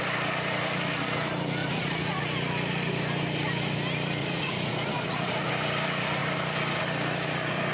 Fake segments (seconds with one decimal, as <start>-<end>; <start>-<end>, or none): 1.6-2.2; 4.2-5.5